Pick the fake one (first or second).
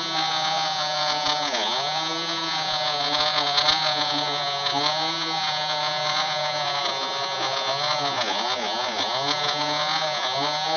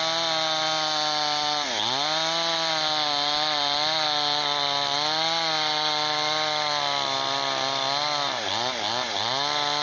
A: first